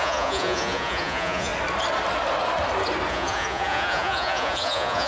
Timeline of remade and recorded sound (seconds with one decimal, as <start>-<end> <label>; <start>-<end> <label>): 0.0-1.5 remade; 1.5-3.1 recorded; 3.1-5.1 remade